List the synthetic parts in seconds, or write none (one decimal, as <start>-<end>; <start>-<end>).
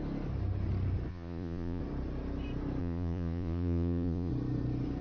1.1-1.8; 2.8-4.3